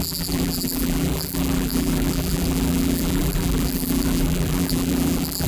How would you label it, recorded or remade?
remade